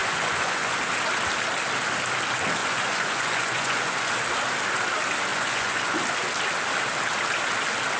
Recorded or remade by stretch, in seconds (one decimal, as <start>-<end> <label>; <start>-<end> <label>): 0.0-0.8 remade; 0.8-2.6 recorded; 2.6-4.1 remade; 4.1-5.3 recorded; 5.3-6.0 remade; 6.0-8.0 recorded